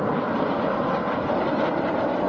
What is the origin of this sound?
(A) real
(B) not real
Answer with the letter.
A